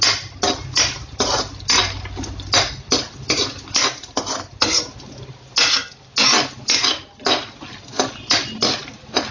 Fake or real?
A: real